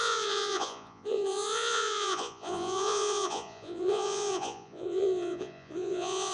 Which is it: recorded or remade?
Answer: remade